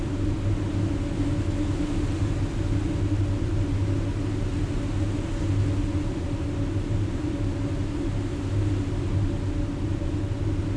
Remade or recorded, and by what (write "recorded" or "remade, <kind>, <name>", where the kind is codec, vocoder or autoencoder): recorded